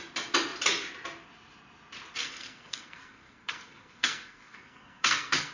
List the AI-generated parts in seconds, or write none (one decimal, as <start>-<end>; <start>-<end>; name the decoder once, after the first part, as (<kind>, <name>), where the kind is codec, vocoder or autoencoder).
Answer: 2.2-5.5 (codec, SNAC)